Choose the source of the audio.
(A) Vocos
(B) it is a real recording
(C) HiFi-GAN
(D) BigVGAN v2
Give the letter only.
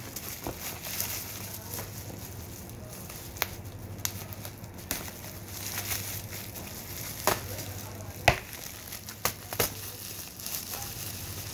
B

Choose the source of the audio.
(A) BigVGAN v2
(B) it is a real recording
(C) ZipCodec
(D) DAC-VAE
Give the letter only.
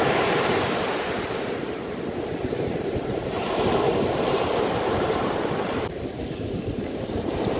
A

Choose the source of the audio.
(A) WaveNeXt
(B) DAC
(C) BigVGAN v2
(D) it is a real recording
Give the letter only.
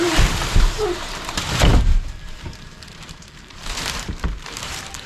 C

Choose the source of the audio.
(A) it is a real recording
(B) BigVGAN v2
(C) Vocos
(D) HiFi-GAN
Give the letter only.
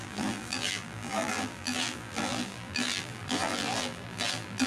B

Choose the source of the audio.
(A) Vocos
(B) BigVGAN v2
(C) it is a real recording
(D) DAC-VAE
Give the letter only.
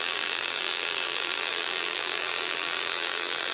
B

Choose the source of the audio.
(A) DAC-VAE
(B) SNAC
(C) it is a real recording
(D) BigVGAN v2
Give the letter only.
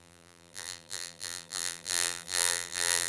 D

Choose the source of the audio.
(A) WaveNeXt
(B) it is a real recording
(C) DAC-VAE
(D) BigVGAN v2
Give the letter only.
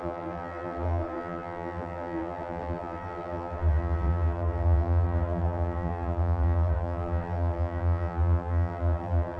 D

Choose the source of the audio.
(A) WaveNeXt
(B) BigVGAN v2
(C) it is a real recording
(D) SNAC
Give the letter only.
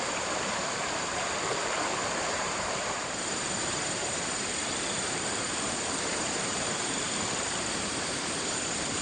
B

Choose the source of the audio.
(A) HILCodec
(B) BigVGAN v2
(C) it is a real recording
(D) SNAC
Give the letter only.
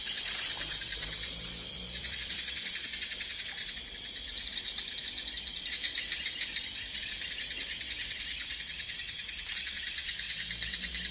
B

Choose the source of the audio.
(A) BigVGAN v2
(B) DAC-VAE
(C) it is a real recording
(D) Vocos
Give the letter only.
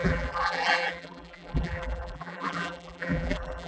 A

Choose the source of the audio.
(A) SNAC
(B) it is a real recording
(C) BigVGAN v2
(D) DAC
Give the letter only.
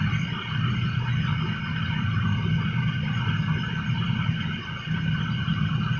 B